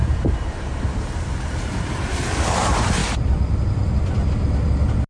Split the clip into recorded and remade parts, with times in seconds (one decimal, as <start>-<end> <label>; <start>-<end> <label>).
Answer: 0.0-3.0 remade; 3.0-5.1 recorded